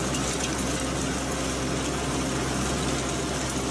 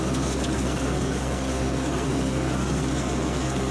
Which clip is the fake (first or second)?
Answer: second